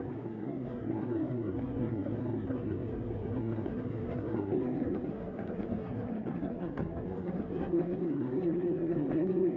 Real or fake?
fake